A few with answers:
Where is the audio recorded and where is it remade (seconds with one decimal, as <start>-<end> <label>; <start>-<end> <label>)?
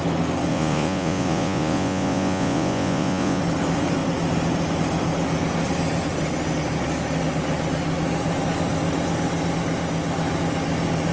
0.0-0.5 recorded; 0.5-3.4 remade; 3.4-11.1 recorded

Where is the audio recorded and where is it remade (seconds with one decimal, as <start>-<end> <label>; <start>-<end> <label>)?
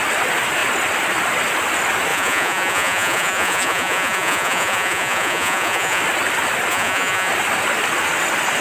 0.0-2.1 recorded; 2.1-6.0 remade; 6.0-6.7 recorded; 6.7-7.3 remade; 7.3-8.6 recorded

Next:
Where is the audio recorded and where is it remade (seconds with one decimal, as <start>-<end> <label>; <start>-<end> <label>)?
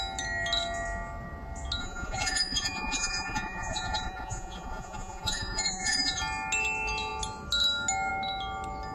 0.0-1.8 recorded; 1.8-6.2 remade; 6.2-8.9 recorded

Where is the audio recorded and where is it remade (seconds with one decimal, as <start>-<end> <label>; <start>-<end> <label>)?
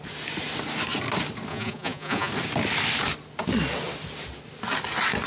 0.0-1.5 recorded; 1.5-2.3 remade; 2.3-5.3 recorded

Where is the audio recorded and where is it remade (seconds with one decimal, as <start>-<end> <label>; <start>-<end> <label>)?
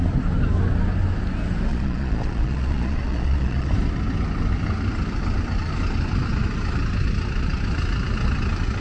0.0-1.7 recorded; 1.7-3.7 remade; 3.7-8.8 recorded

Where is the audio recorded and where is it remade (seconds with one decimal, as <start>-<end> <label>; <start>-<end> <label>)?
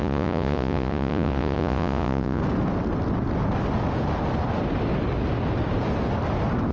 0.0-2.4 remade; 2.4-6.7 recorded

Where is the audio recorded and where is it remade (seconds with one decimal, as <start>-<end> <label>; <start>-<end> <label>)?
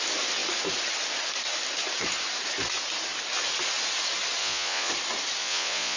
0.0-4.4 recorded; 4.4-4.9 remade; 4.9-5.4 recorded; 5.4-6.0 remade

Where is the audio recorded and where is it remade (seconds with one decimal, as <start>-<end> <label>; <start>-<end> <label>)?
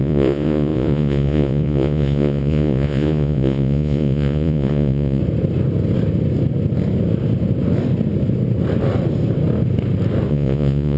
0.0-5.2 remade; 5.2-10.3 recorded; 10.3-11.0 remade